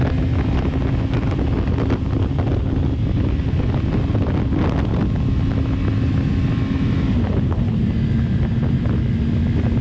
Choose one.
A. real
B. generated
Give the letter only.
A